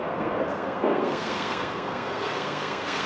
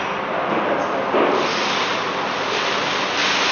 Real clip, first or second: second